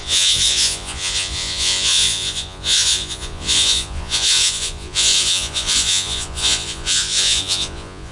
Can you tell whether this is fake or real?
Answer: fake